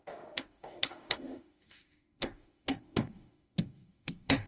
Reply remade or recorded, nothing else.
remade